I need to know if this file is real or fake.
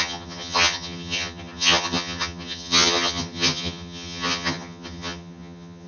fake